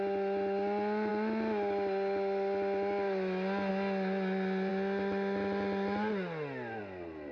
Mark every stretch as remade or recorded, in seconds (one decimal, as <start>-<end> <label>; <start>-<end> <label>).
0.0-7.3 recorded